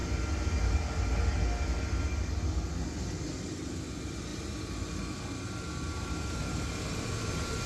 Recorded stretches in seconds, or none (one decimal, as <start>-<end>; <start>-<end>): 0.0-7.7